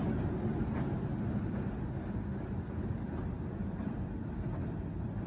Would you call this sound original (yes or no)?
yes